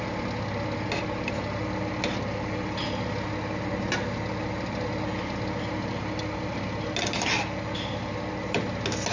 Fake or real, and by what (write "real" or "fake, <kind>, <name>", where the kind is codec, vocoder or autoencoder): real